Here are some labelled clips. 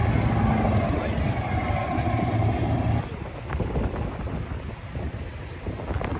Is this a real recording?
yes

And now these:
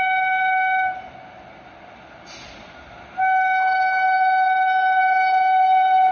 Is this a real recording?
yes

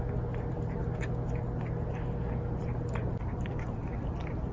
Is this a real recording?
yes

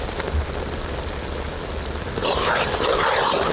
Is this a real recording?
yes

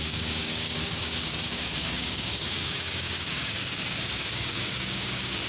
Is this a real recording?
no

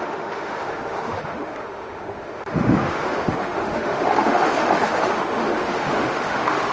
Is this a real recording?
no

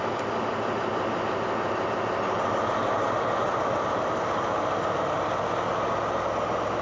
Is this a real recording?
yes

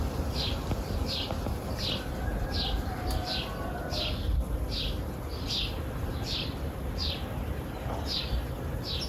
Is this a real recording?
yes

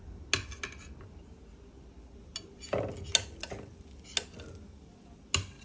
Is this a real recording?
yes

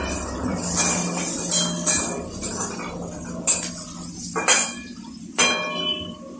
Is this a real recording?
yes